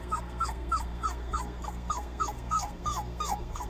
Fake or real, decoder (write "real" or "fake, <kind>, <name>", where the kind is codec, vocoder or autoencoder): fake, codec, SNAC